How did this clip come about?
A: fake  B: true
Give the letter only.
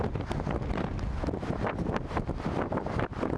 A